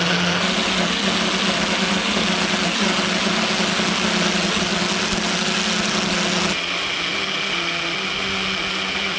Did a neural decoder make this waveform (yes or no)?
no